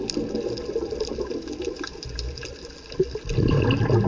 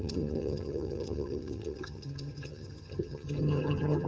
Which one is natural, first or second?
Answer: first